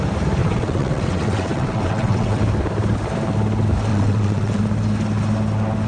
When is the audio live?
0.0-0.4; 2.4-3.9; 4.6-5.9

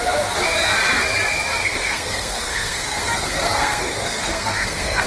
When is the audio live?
0.0-1.6

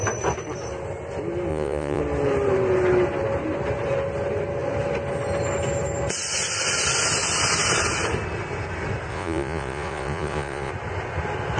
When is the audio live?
0.0-1.5; 2.0-9.1; 10.7-11.6

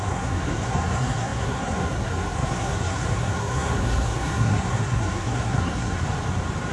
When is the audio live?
6.0-6.7

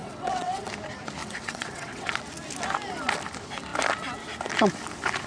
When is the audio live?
0.7-1.2; 2.2-5.3